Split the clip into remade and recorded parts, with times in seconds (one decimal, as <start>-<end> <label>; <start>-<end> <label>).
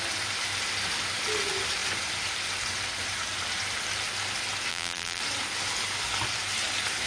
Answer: 0.0-4.7 recorded; 4.7-5.2 remade; 5.2-7.1 recorded